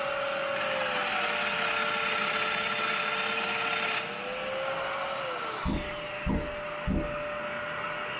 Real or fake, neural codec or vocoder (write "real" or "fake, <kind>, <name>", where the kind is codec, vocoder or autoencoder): real